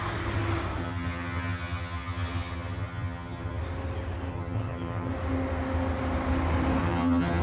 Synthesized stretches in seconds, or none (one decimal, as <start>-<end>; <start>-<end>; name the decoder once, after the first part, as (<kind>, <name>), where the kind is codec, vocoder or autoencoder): 0.8-3.6 (vocoder, HiFi-GAN); 4.3-5.1; 6.8-7.4